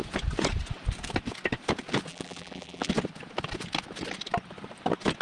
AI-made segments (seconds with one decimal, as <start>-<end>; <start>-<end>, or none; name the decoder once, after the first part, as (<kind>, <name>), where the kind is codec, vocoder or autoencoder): 2.1-2.9 (vocoder, BigVGAN v2)